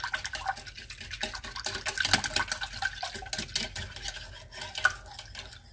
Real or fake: real